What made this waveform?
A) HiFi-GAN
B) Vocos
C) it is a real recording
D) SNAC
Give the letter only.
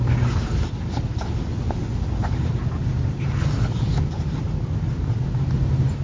C